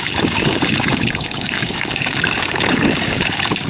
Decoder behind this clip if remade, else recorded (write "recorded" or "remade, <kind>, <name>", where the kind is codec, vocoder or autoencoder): remade, codec, DAC